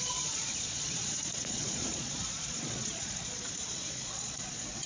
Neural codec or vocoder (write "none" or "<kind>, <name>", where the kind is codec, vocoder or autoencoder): vocoder, Vocos